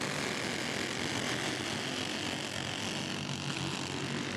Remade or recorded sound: recorded